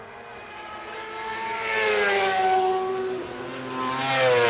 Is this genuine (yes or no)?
yes